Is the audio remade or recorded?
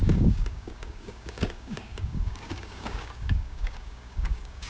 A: remade